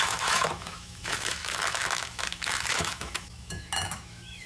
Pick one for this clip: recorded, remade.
remade